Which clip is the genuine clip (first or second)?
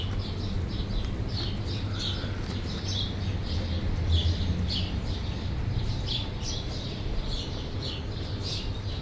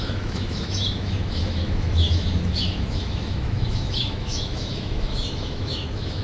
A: first